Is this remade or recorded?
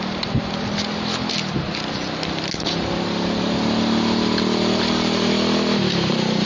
recorded